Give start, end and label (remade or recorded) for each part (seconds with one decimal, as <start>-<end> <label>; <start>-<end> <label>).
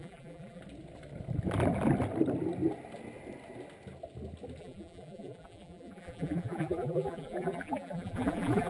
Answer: 0.0-0.6 remade; 0.6-4.6 recorded; 4.6-8.7 remade